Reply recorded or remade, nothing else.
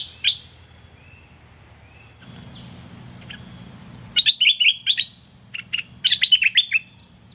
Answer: recorded